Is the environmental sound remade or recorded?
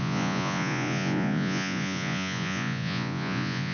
remade